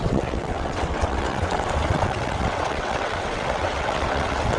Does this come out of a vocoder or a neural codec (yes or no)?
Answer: yes